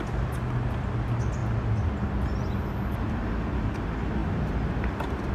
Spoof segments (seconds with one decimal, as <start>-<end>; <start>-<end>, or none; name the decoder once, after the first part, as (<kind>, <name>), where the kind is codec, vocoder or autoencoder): none